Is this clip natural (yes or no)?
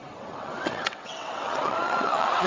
no